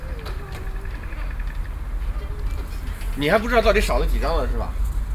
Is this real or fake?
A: real